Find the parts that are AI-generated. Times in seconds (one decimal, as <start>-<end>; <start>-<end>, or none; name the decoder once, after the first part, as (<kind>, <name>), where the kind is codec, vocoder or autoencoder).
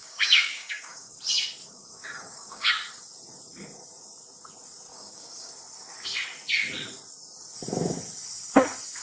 0.0-1.2 (codec, DAC); 1.6-2.7; 4.9-5.5